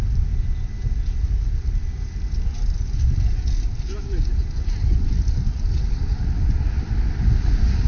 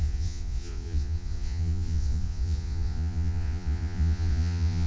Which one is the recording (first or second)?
first